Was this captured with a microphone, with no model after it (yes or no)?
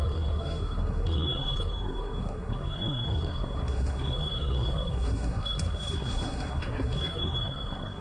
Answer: no